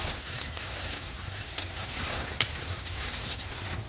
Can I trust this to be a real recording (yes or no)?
no